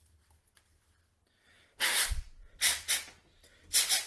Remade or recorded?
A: recorded